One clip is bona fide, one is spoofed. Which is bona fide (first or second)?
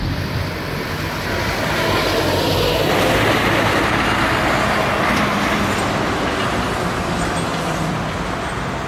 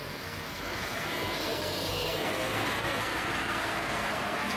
first